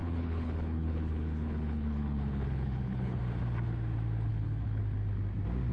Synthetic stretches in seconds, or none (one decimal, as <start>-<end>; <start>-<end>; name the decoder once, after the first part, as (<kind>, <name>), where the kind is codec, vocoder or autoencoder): 0.0-3.2 (codec, HILCodec); 4.3-4.8

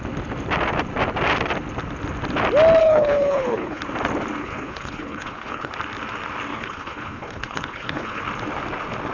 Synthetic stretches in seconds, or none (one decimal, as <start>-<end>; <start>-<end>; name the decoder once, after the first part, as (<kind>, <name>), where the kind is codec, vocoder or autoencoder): 2.8-3.8 (codec, HILCodec); 4.4-5.7; 6.5-8.2